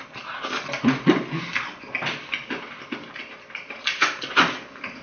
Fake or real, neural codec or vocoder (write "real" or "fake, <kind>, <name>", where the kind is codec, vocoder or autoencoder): fake, vocoder, BigVGAN v2